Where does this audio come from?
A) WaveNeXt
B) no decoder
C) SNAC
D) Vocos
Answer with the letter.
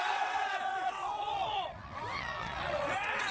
A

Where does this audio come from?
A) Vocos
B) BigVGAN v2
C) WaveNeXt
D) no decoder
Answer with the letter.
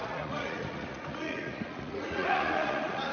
A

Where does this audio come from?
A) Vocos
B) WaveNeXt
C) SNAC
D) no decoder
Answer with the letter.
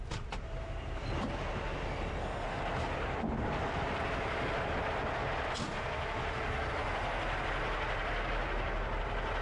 D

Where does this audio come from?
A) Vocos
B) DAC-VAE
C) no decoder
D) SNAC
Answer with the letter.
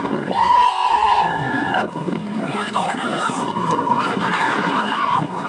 D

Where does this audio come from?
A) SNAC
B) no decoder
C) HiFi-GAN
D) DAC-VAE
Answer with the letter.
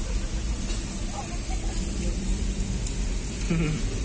B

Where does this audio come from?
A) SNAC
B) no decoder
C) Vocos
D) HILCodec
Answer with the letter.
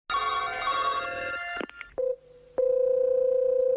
B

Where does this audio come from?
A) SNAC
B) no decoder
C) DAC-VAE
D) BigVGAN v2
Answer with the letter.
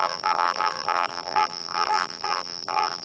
D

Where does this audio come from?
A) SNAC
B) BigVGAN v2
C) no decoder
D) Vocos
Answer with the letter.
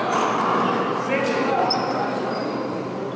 C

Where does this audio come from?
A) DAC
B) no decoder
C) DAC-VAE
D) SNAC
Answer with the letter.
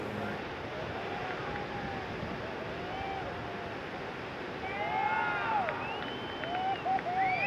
B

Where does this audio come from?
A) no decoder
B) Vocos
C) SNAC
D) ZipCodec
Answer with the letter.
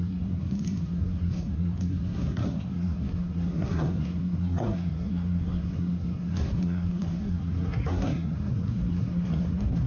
C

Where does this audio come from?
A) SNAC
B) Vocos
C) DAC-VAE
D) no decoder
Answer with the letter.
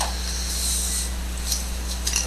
D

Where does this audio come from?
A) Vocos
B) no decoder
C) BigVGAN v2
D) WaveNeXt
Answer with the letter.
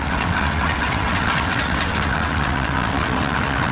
D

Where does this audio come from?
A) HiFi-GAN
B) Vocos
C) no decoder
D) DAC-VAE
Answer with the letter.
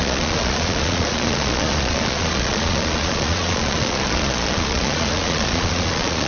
B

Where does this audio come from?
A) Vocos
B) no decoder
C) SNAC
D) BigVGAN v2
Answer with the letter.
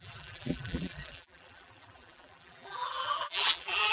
D